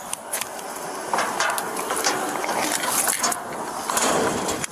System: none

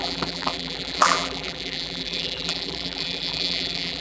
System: vocoder, BigVGAN v2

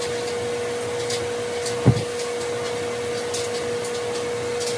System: none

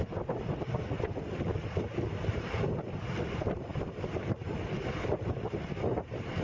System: vocoder, BigVGAN v2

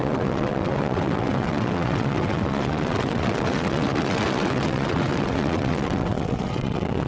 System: vocoder, WaveNeXt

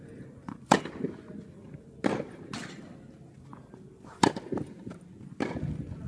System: none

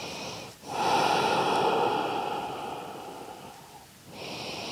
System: vocoder, BigVGAN v2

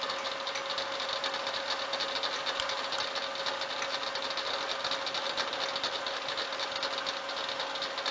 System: none